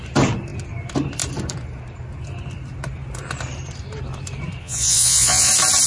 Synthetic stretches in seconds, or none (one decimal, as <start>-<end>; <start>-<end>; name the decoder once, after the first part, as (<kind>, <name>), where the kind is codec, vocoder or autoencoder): 4.6-5.5 (vocoder, Vocos)